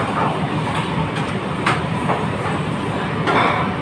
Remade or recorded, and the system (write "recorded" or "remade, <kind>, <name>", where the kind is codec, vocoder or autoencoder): recorded